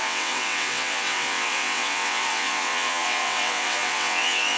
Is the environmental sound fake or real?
fake